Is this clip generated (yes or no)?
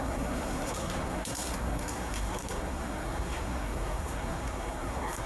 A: yes